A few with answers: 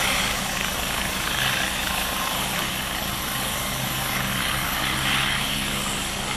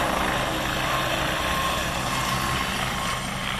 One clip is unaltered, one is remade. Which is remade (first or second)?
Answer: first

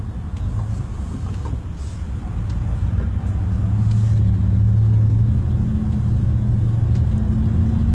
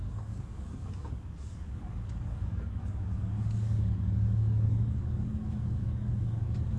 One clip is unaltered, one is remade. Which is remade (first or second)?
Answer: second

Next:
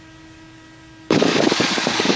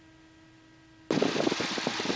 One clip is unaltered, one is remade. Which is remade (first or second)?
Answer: first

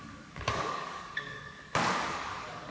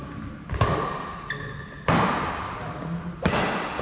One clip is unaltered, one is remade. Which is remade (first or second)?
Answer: first